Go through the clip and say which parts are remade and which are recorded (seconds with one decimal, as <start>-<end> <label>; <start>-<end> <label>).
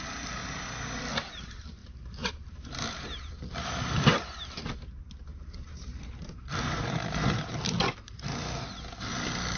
0.0-1.8 recorded; 1.8-3.3 remade; 3.3-5.3 recorded; 5.3-7.8 remade; 7.8-9.6 recorded